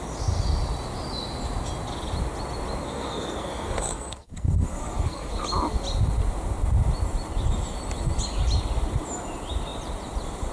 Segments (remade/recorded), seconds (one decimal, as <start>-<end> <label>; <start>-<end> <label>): 0.0-2.8 recorded; 2.8-5.3 remade; 5.3-10.5 recorded